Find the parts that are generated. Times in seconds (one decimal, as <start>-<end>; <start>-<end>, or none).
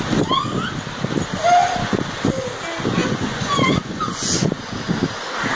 3.0-4.6